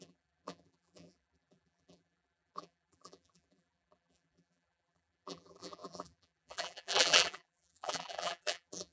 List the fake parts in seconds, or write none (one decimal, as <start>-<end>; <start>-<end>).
0.0-8.9